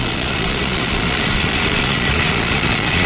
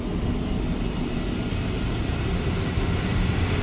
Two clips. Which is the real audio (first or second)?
second